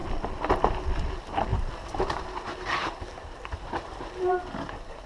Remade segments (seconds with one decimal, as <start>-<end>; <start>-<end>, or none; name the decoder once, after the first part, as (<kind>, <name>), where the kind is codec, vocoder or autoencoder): 1.5-2.0 (vocoder, BigVGAN v2); 2.8-4.4